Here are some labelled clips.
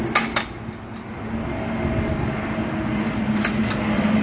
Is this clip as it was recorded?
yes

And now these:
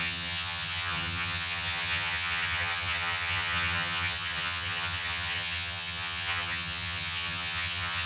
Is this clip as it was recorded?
no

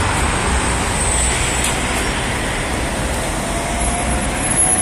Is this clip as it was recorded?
yes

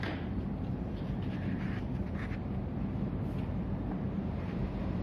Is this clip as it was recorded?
no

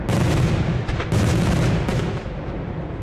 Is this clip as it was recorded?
yes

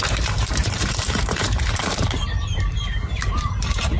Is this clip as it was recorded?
no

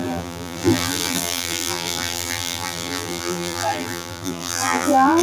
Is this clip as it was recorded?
no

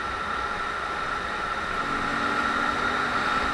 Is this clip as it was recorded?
yes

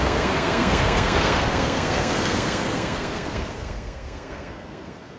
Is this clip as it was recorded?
no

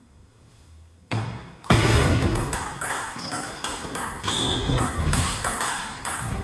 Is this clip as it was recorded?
no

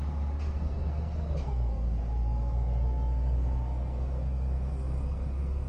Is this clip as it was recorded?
no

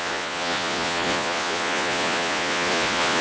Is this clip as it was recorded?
no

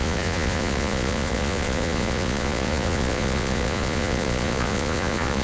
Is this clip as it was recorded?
no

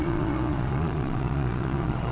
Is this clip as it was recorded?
no